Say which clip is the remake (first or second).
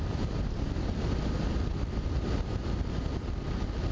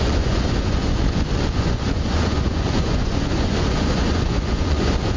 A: second